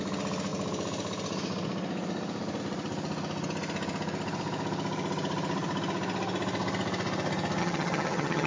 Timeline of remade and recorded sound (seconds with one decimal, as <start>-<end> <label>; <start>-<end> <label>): 0.0-7.6 recorded; 7.6-8.5 remade